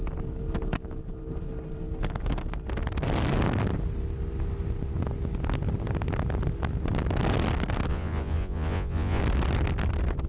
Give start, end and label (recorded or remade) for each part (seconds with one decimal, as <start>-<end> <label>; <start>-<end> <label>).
0.0-7.9 recorded; 7.9-9.2 remade; 9.2-10.3 recorded